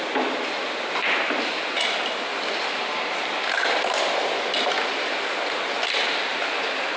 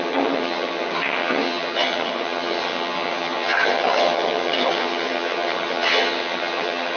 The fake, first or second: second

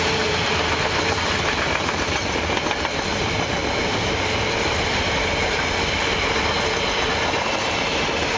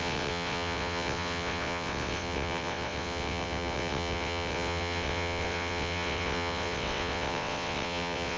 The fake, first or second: second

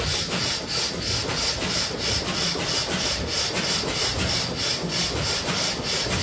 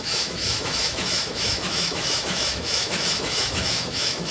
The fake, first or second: second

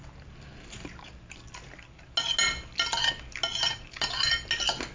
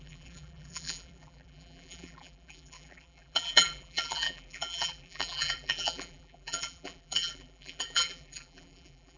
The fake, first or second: second